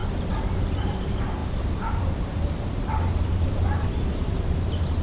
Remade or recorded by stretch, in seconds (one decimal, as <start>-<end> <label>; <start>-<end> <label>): 0.0-0.8 recorded; 0.8-5.0 remade

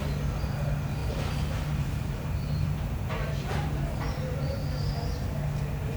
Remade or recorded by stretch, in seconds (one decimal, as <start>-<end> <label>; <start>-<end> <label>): 0.0-1.0 recorded; 1.0-4.6 remade; 4.6-6.0 recorded

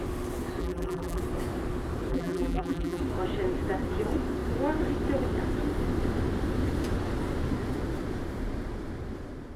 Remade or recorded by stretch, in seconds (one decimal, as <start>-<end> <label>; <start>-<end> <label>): 0.0-0.6 recorded; 0.6-1.2 remade; 1.2-2.1 recorded; 2.1-3.0 remade; 3.0-9.6 recorded

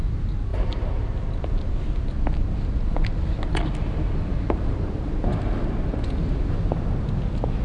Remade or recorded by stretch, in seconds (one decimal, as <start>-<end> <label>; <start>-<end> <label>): 0.0-6.2 recorded; 6.2-6.8 remade; 6.8-7.6 recorded

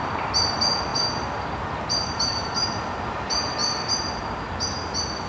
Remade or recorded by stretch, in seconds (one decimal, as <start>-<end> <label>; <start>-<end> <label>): 0.0-0.9 recorded; 0.9-2.8 remade; 2.8-5.3 recorded